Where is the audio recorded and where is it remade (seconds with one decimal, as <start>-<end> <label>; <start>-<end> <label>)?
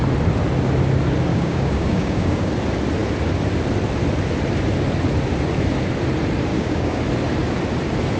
0.0-1.3 recorded; 1.3-2.5 remade; 2.5-6.5 recorded; 6.5-7.0 remade; 7.0-8.2 recorded